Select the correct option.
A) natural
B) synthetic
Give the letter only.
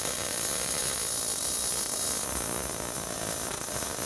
A